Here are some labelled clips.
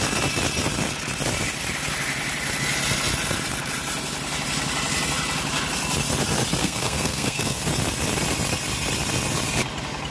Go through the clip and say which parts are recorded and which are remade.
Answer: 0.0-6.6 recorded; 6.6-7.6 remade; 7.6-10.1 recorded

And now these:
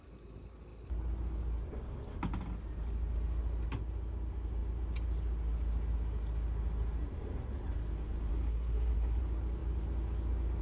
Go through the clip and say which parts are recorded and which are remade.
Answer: 0.0-8.3 recorded; 8.3-9.2 remade; 9.2-10.6 recorded

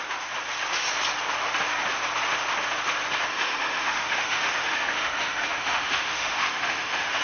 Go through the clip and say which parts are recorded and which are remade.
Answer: 0.0-3.3 recorded; 3.3-7.2 remade

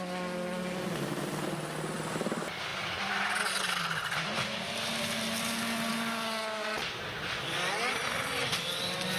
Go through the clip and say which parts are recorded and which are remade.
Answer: 0.0-9.2 recorded

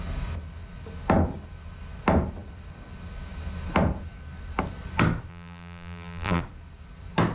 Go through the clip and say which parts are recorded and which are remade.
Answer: 0.0-5.3 recorded; 5.3-6.4 remade; 6.4-7.3 recorded

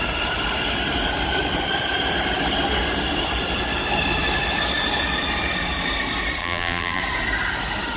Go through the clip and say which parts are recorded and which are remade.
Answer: 0.0-6.4 recorded; 6.4-7.0 remade; 7.0-8.0 recorded

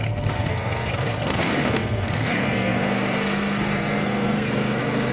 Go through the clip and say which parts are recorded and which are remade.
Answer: 0.0-5.1 remade